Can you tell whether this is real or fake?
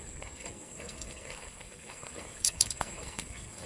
fake